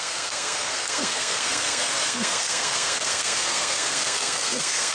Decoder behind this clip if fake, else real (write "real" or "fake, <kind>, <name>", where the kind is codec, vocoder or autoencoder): fake, codec, SNAC